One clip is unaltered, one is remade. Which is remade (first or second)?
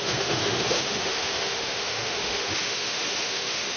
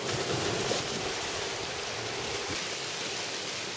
first